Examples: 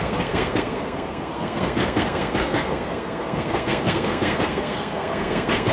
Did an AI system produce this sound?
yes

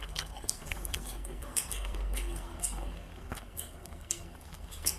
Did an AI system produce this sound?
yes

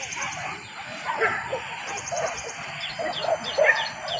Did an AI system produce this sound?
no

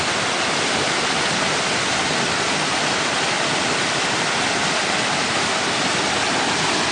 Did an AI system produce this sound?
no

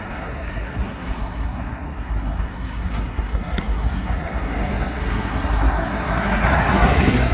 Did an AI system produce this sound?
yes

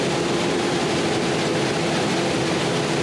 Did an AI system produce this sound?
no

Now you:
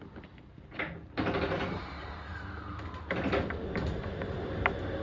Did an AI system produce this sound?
no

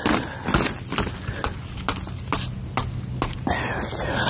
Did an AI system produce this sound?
no